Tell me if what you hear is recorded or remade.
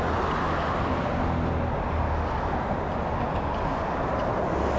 recorded